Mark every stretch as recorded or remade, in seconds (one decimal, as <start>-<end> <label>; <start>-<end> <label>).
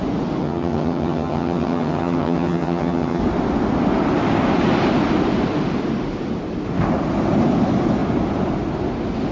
0.0-0.4 recorded; 0.4-3.2 remade; 3.2-9.3 recorded